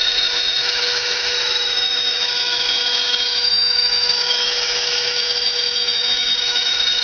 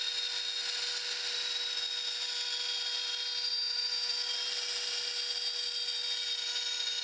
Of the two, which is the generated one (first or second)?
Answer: first